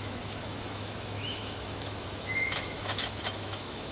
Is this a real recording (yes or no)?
no